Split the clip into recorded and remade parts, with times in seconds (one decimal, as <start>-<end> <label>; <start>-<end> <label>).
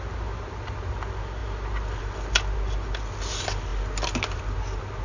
0.0-5.0 recorded